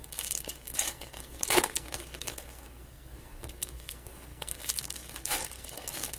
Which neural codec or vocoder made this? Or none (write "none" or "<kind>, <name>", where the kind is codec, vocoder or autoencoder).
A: codec, SNAC